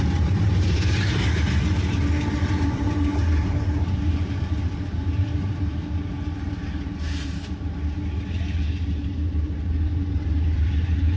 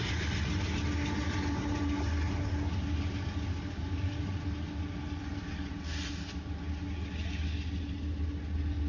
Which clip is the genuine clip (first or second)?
second